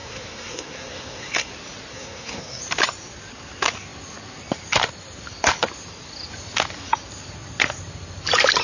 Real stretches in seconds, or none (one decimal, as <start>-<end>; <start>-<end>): 1.5-1.9; 2.6-8.6